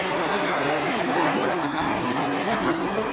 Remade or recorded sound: remade